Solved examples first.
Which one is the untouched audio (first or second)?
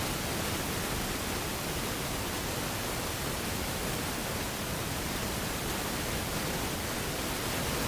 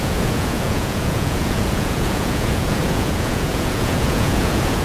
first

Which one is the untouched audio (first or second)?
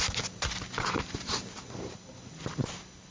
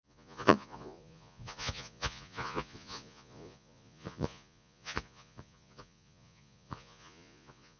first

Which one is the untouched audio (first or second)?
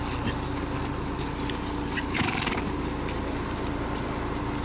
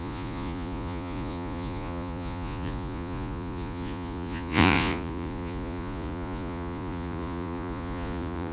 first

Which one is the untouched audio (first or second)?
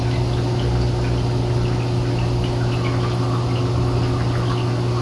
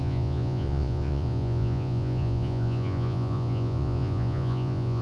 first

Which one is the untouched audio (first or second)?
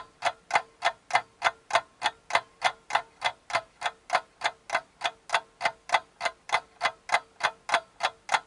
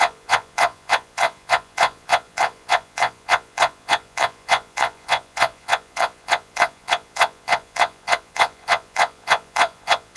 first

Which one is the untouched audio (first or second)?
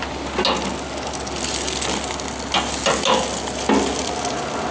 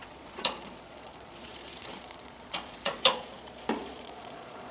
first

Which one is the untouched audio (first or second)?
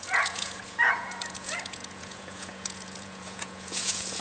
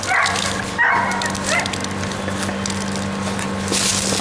second